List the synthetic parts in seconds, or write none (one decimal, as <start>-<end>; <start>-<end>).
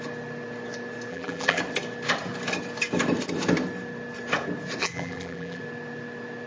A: 1.1-1.6; 4.8-5.6